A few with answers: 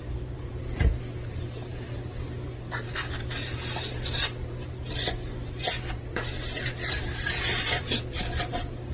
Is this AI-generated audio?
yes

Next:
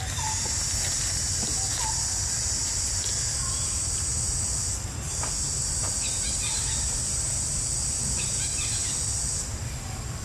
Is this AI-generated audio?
no